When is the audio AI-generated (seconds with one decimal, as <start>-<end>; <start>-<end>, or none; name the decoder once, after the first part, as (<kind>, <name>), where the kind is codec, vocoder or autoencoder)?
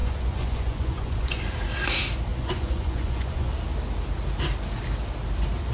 0.0-1.4 (vocoder, Vocos); 2.3-3.5